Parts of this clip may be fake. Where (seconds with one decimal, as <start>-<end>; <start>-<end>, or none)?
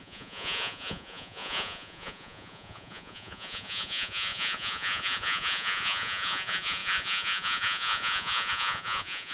0.0-9.3